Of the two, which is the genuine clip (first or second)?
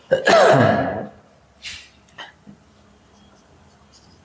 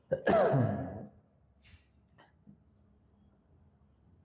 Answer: second